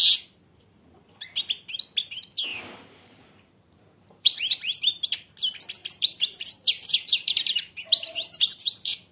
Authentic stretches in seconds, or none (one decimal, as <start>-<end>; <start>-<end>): 0.0-2.5; 4.8-5.8